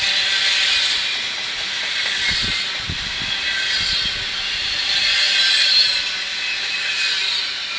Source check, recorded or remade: recorded